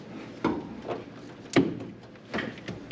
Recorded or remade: recorded